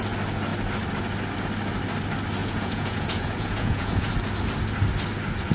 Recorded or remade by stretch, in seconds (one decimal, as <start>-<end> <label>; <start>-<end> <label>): 0.0-2.4 recorded; 2.4-4.1 remade; 4.1-5.5 recorded